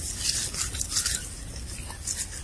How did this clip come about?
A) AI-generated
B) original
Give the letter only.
B